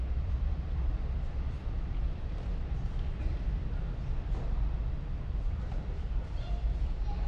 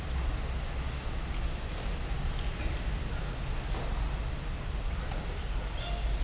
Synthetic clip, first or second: first